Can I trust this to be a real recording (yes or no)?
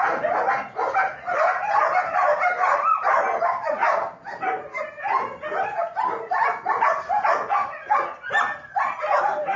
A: yes